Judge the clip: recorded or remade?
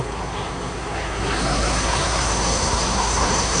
remade